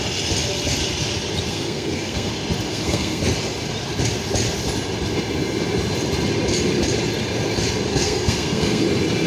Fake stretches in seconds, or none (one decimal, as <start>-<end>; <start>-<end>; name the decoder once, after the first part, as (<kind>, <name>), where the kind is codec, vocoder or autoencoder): 1.5-2.3 (codec, SNAC); 2.7-3.2; 7.9-8.8